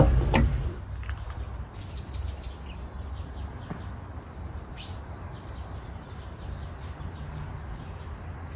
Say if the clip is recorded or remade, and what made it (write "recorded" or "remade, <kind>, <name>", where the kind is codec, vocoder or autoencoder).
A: recorded